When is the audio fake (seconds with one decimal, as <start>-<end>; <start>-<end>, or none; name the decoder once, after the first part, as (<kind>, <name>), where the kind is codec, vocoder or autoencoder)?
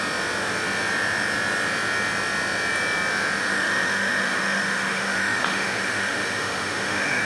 3.4-7.2 (autoencoder, DAC-VAE)